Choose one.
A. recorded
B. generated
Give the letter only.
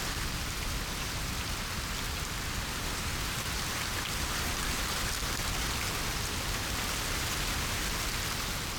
A